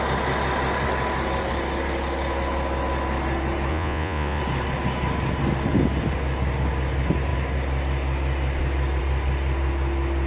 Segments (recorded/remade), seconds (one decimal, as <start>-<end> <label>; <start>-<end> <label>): 0.0-3.7 recorded; 3.7-4.4 remade; 4.4-10.3 recorded

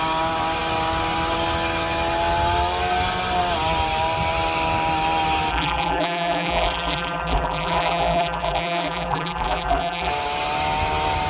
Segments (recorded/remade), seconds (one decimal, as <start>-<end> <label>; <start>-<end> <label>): 0.0-5.5 recorded; 5.5-10.1 remade; 10.1-11.3 recorded